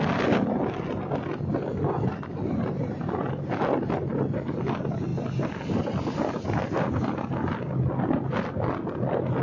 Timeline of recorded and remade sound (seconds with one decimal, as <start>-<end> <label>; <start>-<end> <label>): 0.0-9.4 recorded